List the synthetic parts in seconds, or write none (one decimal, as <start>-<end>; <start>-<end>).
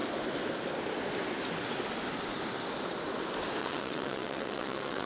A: 3.6-5.1